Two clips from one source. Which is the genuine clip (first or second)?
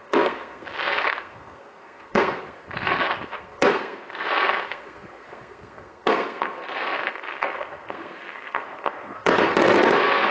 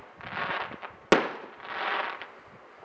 second